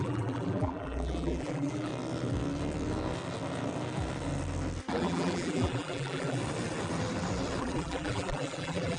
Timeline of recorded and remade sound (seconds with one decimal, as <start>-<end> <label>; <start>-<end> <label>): 0.0-1.9 remade; 1.9-4.9 recorded; 4.9-6.4 remade; 6.4-7.6 recorded; 7.6-9.0 remade